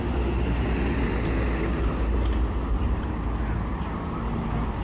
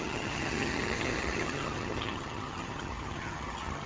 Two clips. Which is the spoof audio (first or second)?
second